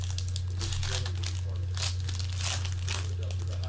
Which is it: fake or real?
real